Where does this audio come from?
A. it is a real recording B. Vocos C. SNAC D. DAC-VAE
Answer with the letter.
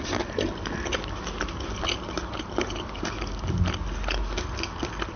A